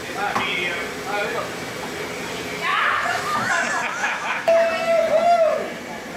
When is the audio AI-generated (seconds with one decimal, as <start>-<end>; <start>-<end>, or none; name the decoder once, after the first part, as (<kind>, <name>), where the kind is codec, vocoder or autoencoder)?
2.7-3.5 (autoencoder, DAC-VAE); 4.0-4.5

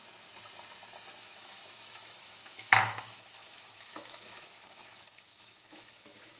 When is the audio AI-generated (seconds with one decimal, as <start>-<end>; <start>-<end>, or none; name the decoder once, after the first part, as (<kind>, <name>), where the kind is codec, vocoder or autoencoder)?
1.2-6.4 (autoencoder, DAC-VAE)